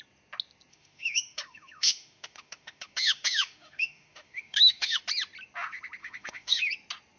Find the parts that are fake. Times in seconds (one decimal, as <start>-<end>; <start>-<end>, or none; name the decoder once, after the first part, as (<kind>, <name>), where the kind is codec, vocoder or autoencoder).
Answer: 0.7-5.0 (autoencoder, DAC-VAE); 6.0-6.7